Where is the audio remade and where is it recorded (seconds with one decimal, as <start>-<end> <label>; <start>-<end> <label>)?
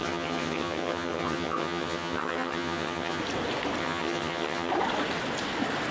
0.0-3.2 remade; 3.2-3.8 recorded; 3.8-4.7 remade; 4.7-5.9 recorded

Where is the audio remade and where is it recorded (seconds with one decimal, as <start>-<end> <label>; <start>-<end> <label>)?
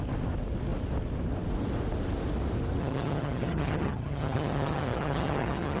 0.0-2.8 recorded; 2.8-5.8 remade